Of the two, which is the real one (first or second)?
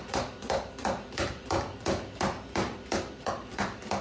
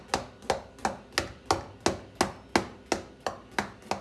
second